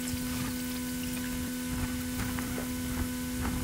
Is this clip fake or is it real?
real